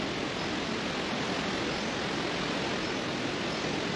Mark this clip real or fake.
real